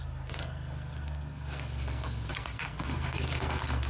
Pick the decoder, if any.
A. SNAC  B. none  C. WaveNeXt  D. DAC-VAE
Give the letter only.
A